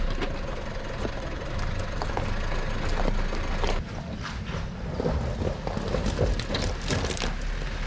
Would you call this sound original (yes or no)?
yes